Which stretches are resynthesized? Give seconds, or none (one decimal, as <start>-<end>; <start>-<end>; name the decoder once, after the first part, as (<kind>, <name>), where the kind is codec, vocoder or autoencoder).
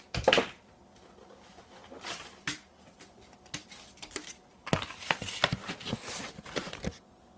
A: none